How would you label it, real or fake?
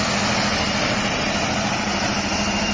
real